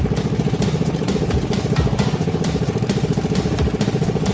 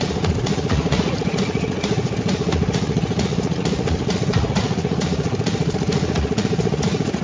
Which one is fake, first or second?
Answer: second